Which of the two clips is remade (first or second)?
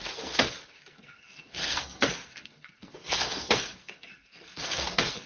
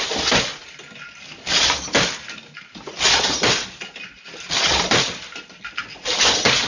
first